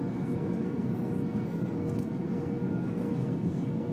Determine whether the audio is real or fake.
fake